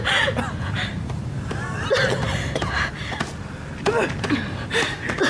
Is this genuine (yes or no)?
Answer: yes